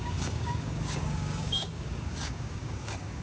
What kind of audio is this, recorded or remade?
remade